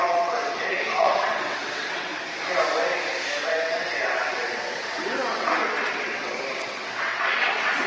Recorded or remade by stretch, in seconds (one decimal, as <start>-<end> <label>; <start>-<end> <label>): 0.0-2.1 remade; 2.1-3.4 recorded; 3.4-7.9 remade